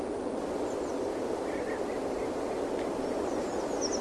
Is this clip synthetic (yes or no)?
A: no